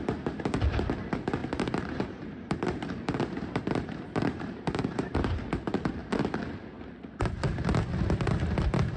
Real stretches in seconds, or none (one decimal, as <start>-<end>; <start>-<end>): 0.0-1.4; 5.4-9.0